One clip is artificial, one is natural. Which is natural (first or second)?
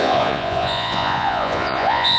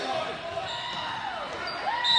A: second